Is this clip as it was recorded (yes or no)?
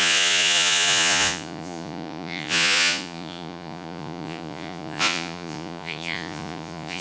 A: no